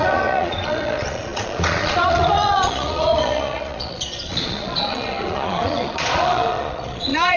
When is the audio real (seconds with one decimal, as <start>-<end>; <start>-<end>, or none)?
none